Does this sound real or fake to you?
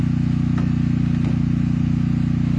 real